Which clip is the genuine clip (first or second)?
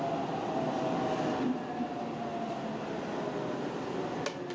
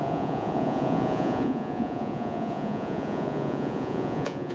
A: first